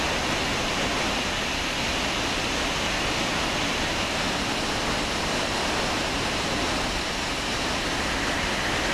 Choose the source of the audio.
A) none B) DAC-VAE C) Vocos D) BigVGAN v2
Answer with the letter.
A